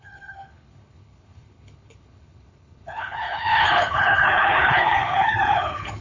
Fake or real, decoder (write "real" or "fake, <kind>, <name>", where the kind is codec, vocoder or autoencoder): fake, codec, HILCodec